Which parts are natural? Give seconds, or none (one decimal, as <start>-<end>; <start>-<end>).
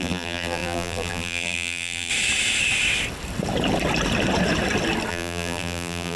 2.1-5.1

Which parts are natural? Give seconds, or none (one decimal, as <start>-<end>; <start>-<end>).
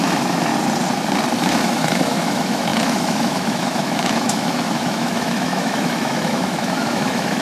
0.5-1.4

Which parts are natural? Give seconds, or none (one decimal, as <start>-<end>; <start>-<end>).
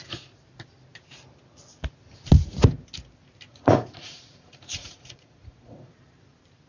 0.0-3.5; 5.9-6.7